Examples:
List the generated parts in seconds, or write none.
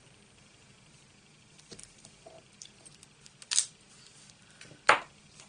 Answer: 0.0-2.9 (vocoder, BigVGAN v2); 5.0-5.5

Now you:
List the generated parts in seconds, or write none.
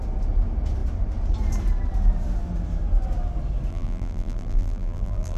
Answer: 3.7-5.4 (vocoder, BigVGAN v2)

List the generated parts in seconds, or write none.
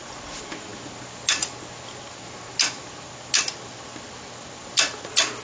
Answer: none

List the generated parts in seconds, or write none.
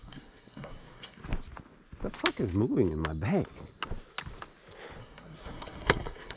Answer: 0.0-1.2 (codec, SNAC); 5.0-6.4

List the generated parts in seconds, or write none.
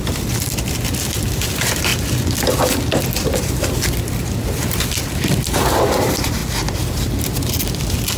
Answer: 0.0-1.9 (vocoder, BigVGAN v2); 2.9-6.4; 7.2-8.2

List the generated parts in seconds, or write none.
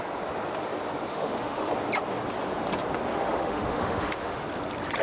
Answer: 1.1-1.7 (autoencoder, DAC-VAE); 3.1-4.4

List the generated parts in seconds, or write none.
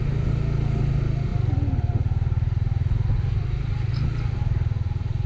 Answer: none